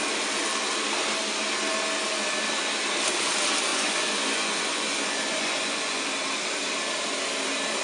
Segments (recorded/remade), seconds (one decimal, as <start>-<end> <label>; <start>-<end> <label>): 0.0-3.7 recorded; 3.7-6.0 remade; 6.0-7.8 recorded